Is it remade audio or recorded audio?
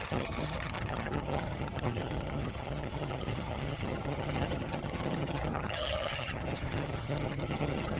remade